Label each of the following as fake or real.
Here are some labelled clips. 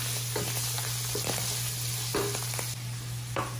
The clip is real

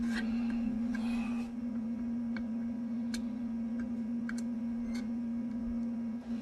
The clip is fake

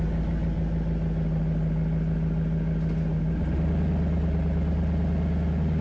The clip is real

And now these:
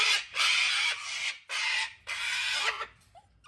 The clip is real